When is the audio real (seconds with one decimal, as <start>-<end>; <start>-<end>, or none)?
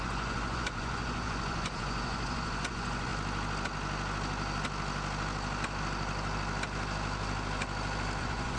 3.1-8.2